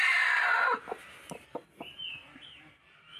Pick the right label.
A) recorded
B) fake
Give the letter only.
A